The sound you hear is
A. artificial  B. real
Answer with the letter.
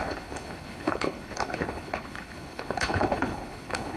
A